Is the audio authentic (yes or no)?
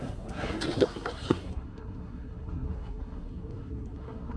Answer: no